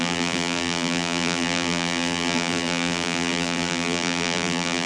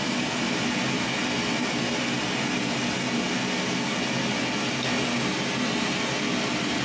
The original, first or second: second